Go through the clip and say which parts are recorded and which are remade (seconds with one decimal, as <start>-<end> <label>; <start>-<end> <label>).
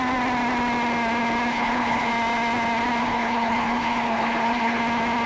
0.0-1.5 recorded; 1.5-2.1 remade; 2.1-3.0 recorded; 3.0-4.8 remade; 4.8-5.3 recorded